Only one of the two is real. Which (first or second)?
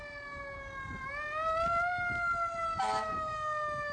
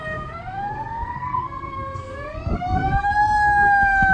first